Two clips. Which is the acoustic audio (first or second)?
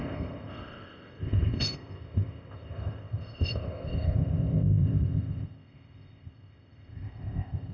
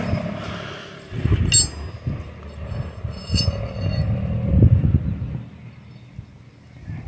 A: second